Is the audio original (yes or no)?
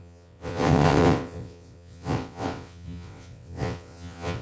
no